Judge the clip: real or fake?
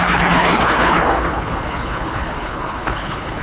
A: fake